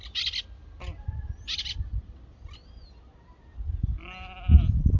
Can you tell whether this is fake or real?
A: real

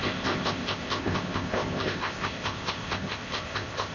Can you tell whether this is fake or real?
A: fake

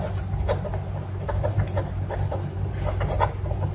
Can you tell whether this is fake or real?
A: real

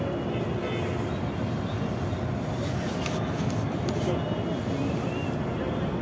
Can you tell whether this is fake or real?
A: real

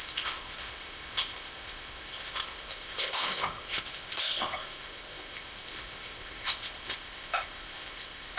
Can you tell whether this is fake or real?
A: fake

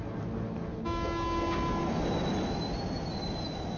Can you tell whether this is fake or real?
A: real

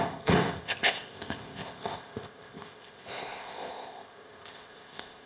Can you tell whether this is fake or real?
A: fake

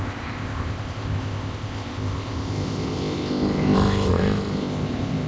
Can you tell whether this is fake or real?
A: fake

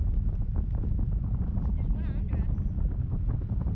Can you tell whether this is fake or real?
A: real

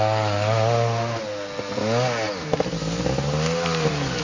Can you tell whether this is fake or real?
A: real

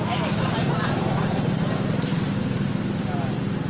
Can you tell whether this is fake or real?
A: real